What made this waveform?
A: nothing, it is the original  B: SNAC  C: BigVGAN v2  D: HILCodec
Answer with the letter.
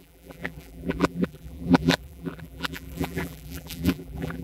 C